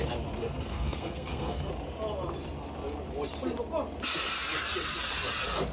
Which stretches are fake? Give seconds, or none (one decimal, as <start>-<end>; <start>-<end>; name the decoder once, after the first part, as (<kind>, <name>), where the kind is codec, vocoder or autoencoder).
0.4-1.7 (codec, SNAC)